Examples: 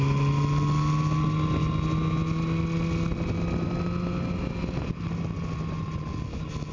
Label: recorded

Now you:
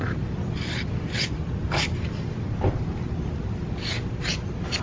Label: recorded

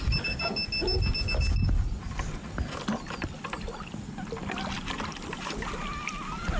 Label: recorded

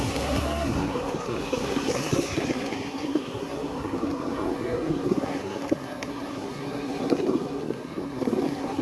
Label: remade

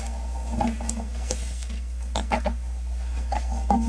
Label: remade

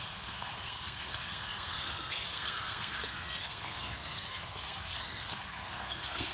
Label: remade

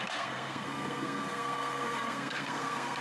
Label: remade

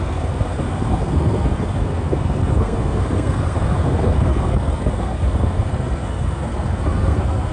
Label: remade